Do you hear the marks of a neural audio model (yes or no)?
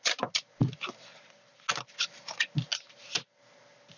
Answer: no